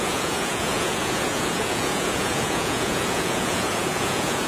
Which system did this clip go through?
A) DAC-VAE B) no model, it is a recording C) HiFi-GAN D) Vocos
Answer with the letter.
D